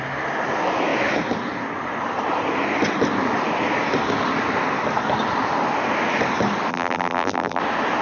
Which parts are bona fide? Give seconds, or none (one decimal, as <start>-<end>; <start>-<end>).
0.0-6.7; 7.6-8.0